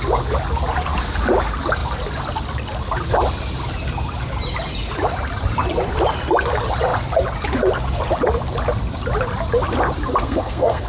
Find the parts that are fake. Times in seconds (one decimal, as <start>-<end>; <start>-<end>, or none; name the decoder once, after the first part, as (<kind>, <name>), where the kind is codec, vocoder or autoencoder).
10.2-10.9 (codec, SNAC)